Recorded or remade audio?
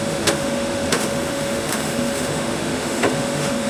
remade